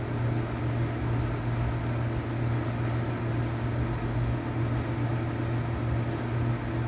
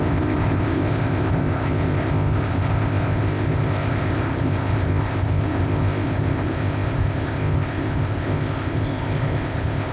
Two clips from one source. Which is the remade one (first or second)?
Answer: second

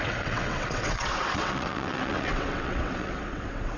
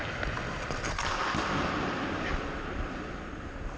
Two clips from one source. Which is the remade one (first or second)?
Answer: first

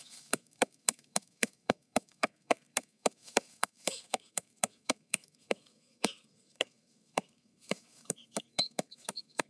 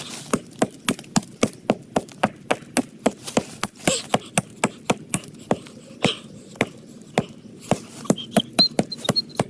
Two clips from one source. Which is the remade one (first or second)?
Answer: first